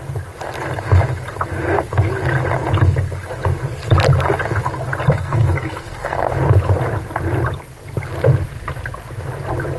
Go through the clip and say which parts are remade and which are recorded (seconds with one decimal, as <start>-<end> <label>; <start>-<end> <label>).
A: 0.0-5.1 recorded; 5.1-6.4 remade; 6.4-9.8 recorded